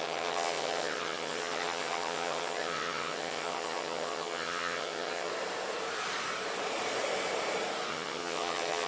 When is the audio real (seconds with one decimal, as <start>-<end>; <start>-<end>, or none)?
5.3-7.9